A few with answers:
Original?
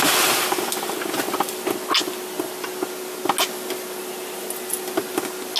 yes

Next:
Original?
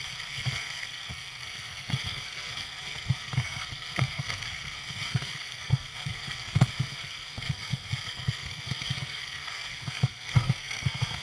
no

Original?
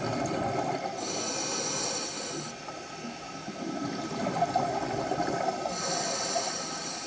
yes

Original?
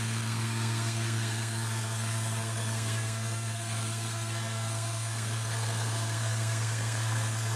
no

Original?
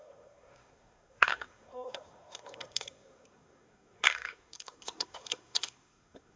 no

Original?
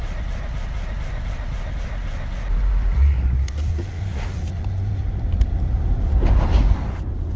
yes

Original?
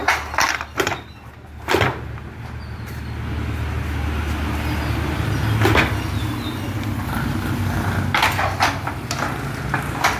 yes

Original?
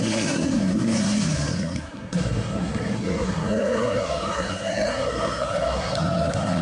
no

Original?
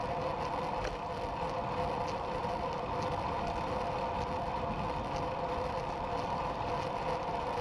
yes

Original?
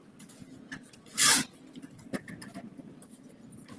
yes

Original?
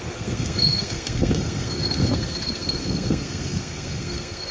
no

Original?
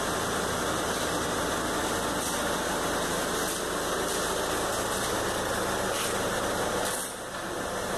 yes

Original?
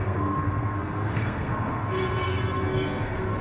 no